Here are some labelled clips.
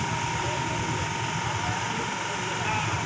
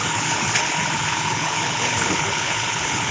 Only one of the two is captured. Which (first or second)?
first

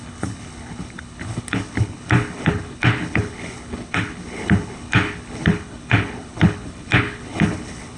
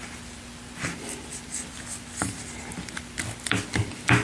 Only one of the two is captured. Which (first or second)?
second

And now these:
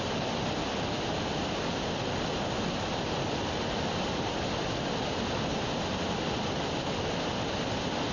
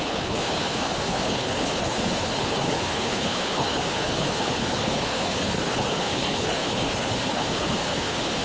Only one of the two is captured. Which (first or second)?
first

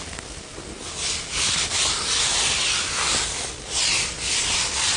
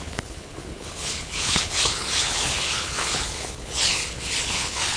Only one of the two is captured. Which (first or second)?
first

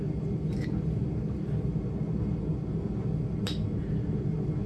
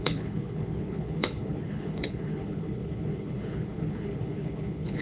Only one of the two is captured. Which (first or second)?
first